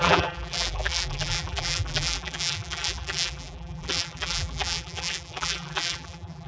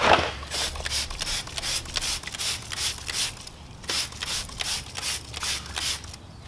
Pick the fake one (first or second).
first